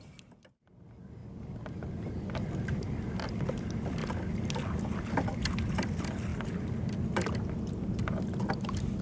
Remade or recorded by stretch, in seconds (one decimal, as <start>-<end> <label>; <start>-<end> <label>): 0.0-9.0 recorded